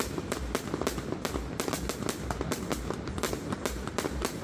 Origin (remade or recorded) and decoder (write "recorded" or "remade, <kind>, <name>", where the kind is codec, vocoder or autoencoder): recorded